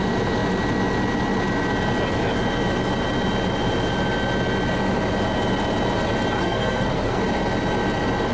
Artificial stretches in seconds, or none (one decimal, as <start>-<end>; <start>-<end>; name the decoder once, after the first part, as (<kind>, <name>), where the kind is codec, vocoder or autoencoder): 6.4-7.2 (codec, SNAC)